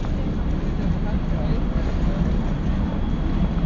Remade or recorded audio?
recorded